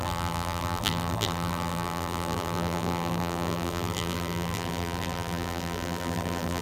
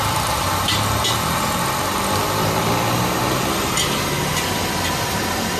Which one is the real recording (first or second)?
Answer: second